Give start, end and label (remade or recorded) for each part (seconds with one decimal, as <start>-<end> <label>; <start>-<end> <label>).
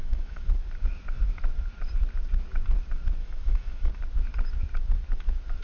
0.0-0.5 remade; 0.5-3.2 recorded; 3.2-3.9 remade; 3.9-5.6 recorded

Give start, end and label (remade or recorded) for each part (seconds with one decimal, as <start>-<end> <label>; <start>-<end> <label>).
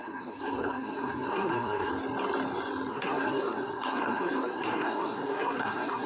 0.0-1.9 remade; 1.9-2.9 recorded; 2.9-6.1 remade